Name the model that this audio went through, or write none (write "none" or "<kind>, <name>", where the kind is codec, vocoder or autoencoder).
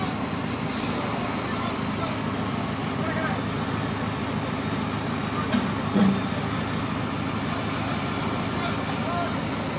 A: none